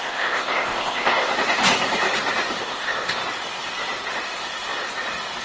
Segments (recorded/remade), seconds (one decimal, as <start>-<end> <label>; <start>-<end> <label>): 0.0-1.3 remade; 1.3-2.6 recorded; 2.6-3.2 remade; 3.2-5.4 recorded

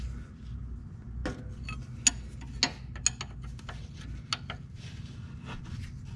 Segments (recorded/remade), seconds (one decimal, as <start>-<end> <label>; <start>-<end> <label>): 0.0-6.2 recorded

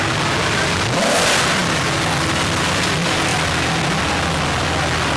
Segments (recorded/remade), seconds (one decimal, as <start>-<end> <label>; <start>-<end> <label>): 0.0-5.2 recorded

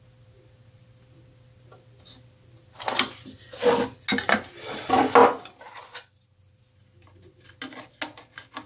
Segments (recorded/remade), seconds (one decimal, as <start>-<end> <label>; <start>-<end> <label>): 0.0-8.7 recorded

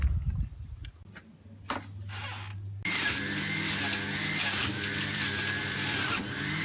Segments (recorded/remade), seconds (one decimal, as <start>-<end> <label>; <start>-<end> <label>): 0.0-0.8 remade; 0.8-4.8 recorded; 4.8-6.6 remade

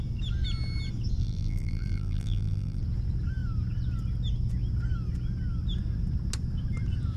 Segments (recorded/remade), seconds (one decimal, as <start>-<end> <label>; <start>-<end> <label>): 0.0-1.2 recorded; 1.2-2.8 remade; 2.8-7.2 recorded

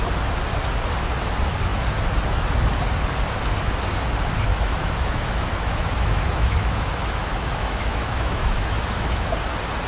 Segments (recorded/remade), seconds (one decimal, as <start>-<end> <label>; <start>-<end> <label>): 0.0-4.5 recorded; 4.5-9.3 remade; 9.3-9.9 recorded

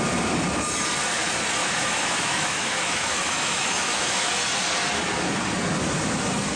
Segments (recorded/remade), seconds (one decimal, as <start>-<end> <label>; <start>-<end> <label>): 0.0-1.6 recorded; 1.6-4.3 remade; 4.3-6.6 recorded